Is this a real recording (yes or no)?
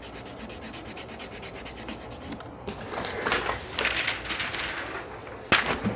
yes